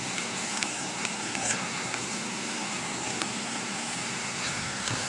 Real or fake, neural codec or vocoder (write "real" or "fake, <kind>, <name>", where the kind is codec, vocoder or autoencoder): fake, codec, SNAC